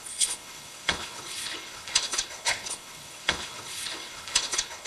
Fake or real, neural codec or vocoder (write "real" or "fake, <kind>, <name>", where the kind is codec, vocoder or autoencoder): fake, codec, HILCodec